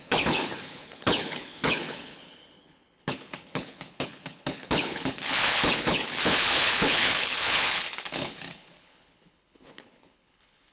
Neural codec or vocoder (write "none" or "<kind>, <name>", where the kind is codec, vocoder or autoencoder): codec, HILCodec